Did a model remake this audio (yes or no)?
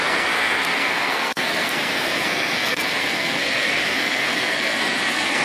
yes